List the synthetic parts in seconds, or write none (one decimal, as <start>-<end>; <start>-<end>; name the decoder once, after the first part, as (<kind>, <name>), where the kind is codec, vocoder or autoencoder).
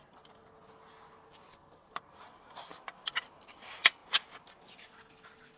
0.0-0.4 (vocoder, BigVGAN v2); 1.7-2.7; 3.2-4.0